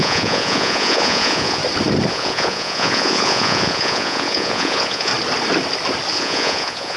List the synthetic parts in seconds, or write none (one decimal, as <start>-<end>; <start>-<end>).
0.0-1.6; 2.1-5.1; 6.1-7.0